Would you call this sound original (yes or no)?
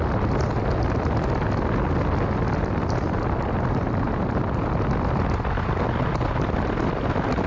yes